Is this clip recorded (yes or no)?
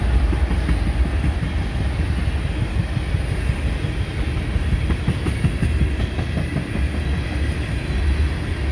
yes